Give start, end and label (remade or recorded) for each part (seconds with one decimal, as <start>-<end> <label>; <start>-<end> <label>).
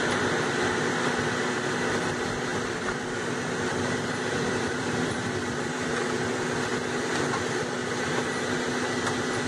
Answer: 0.0-2.5 recorded; 2.5-6.3 remade; 6.3-9.5 recorded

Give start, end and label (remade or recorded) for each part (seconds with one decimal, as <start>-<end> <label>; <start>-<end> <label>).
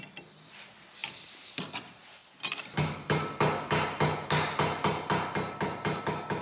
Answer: 0.0-6.4 recorded